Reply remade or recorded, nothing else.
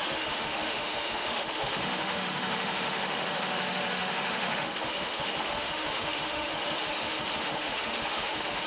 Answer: remade